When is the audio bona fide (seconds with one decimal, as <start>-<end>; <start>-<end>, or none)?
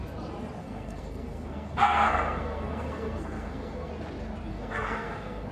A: 0.0-0.6; 3.9-4.5